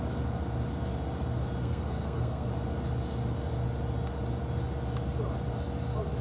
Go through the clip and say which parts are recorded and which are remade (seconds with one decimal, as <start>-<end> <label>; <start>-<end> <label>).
0.0-1.6 recorded; 1.6-2.5 remade; 2.5-6.2 recorded